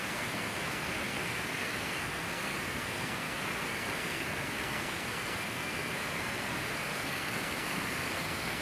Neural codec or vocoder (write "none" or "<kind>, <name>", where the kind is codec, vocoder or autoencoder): codec, SNAC